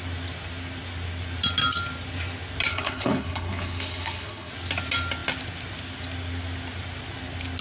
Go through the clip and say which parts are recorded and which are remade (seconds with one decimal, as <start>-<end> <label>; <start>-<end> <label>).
0.0-2.7 recorded; 2.7-4.5 remade; 4.5-7.6 recorded